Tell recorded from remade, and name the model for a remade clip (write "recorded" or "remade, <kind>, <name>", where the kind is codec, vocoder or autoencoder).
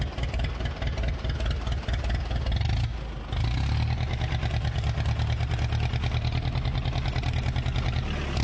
recorded